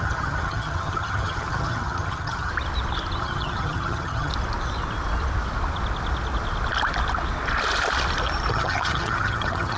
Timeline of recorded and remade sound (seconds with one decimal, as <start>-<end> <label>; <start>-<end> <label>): 0.0-2.5 remade; 2.5-3.2 recorded; 3.2-4.3 remade; 4.3-8.5 recorded; 8.5-9.8 remade